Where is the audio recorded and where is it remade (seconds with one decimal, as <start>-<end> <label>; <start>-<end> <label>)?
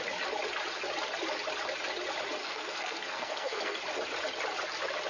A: 0.0-2.4 recorded; 2.4-3.8 remade; 3.8-5.1 recorded